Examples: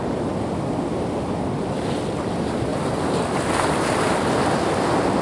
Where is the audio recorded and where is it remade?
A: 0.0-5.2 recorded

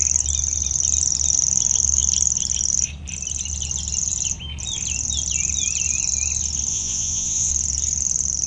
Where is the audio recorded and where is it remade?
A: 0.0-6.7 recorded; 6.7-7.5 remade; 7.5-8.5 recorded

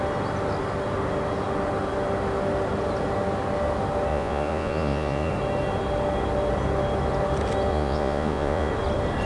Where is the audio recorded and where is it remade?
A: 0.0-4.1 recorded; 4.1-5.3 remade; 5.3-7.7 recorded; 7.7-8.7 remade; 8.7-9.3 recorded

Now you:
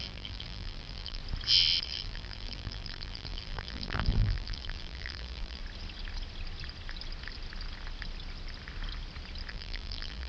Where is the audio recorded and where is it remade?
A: 0.0-1.2 remade; 1.2-1.8 recorded; 1.8-5.6 remade; 5.6-9.5 recorded; 9.5-10.3 remade

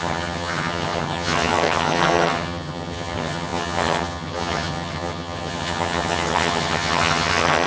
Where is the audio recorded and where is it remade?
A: 0.0-7.7 remade

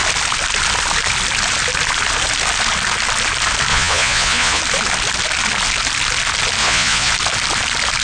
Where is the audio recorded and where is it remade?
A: 0.0-3.7 recorded; 3.7-4.6 remade; 4.6-6.6 recorded; 6.6-7.1 remade; 7.1-8.0 recorded